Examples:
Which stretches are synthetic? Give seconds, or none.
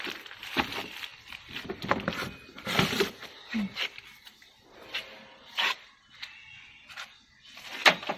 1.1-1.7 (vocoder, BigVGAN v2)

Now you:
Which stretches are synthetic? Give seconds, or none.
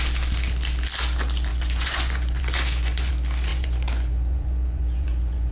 1.5-3.1 (vocoder, Vocos); 3.5-5.5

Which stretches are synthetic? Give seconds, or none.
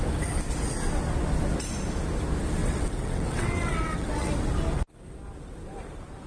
2.6-4.3 (vocoder, WaveNeXt)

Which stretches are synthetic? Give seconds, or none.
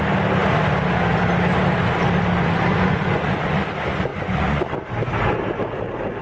2.7-3.6 (vocoder, Vocos); 4.1-4.6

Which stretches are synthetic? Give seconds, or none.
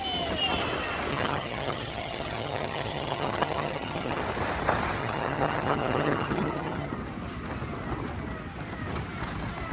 1.1-4.2 (vocoder, HiFi-GAN); 5.0-6.9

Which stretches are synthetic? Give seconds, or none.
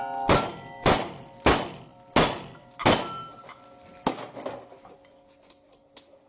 none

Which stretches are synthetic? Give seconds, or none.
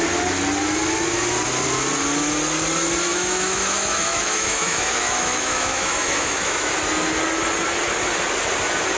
3.1-6.7 (autoencoder, DAC-VAE)